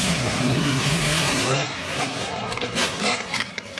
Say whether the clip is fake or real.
fake